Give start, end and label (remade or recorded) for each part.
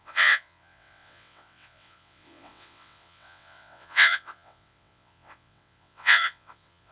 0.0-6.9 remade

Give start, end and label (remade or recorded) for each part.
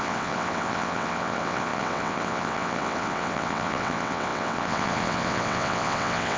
0.0-6.4 remade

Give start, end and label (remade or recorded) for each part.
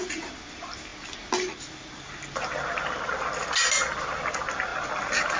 0.0-5.4 recorded